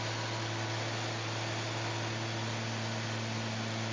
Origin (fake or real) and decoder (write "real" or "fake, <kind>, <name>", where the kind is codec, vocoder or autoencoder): real